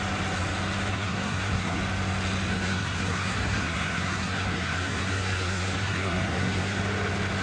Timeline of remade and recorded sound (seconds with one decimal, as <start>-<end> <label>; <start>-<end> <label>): 0.0-0.9 recorded; 0.9-1.8 remade; 1.8-2.5 recorded; 2.5-6.8 remade; 6.8-7.4 recorded